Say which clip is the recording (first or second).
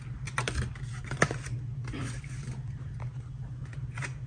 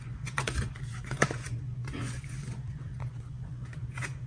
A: first